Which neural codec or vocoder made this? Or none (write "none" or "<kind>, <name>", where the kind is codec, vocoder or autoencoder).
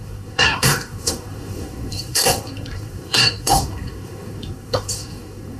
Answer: codec, SNAC